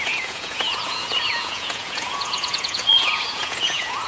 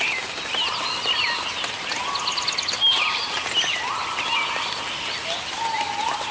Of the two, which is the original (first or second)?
second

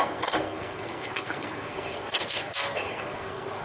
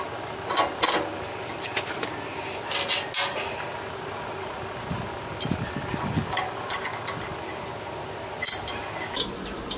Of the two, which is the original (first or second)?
second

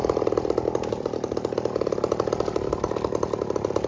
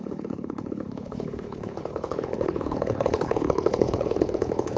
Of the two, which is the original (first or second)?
first